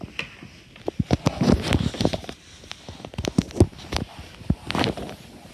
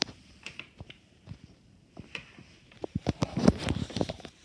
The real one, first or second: first